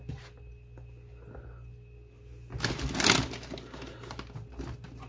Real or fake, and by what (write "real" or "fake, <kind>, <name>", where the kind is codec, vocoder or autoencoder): real